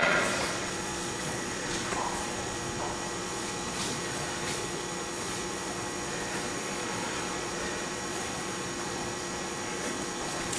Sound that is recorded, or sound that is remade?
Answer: remade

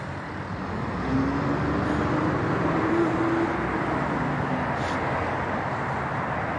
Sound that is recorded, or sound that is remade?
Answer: recorded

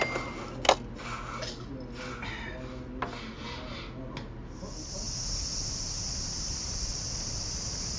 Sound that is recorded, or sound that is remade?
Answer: recorded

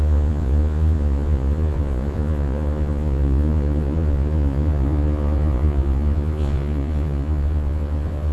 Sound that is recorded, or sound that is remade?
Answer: remade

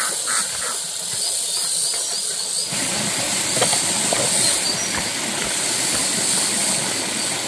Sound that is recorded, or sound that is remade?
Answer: recorded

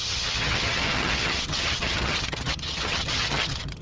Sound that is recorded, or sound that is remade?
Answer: remade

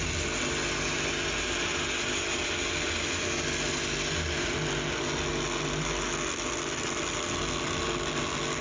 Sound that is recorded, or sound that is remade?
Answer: recorded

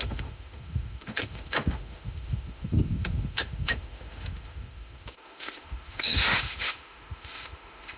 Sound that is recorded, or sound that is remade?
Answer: remade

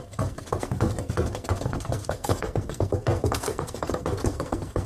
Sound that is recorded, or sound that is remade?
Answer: remade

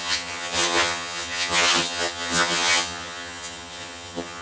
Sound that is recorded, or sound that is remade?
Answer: remade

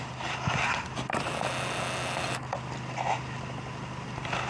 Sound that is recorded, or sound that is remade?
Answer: recorded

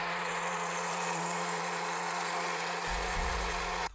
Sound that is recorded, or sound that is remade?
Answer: remade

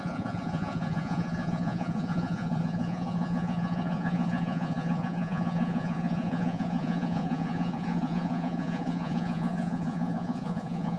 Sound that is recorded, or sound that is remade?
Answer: remade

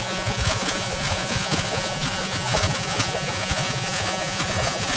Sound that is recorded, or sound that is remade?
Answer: remade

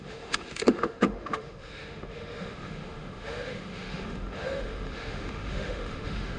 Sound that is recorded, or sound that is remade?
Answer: remade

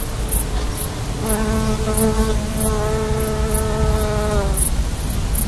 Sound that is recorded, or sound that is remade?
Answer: recorded